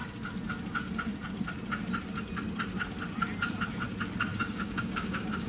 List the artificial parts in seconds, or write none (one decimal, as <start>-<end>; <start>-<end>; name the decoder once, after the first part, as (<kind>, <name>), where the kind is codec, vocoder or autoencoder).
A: 4.3-5.5 (codec, DAC)

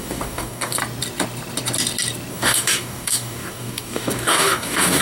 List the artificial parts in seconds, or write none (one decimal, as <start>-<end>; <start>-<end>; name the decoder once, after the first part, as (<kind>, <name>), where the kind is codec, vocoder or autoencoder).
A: 0.0-0.8 (codec, DAC); 2.3-5.0

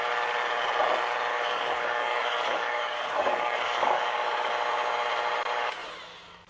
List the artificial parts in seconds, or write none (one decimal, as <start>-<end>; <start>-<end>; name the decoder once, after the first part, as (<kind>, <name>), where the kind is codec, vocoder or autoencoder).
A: 1.3-4.5 (codec, DAC)